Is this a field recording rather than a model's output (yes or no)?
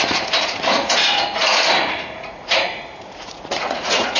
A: no